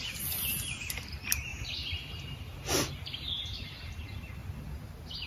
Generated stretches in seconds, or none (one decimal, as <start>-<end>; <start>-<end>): 1.5-3.3